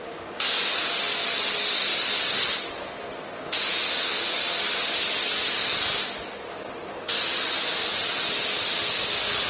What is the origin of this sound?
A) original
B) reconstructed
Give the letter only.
A